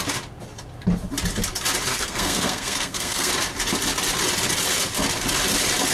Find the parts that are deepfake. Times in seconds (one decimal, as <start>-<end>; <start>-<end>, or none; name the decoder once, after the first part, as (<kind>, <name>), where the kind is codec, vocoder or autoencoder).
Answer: 1.9-3.3 (codec, SNAC)